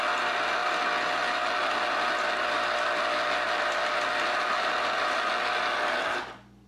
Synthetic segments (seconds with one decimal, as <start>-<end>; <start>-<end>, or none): none